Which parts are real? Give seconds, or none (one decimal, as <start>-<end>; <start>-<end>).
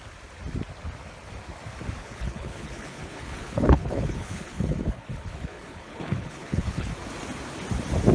0.0-2.0; 6.9-8.1